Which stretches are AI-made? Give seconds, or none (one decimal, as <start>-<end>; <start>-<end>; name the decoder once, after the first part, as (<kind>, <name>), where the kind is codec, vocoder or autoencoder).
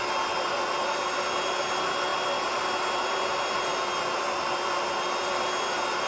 none